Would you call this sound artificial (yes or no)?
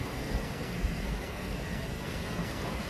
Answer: yes